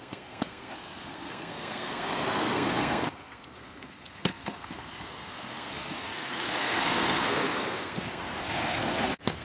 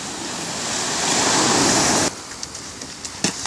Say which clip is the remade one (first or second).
first